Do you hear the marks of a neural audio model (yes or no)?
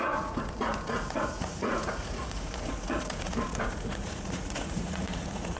yes